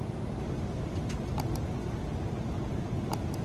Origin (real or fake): real